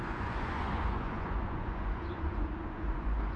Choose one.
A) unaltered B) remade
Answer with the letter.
B